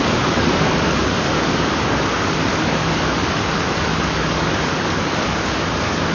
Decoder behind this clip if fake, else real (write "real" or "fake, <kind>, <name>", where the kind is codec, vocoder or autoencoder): fake, codec, DAC